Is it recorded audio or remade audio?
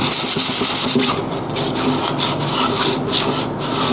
recorded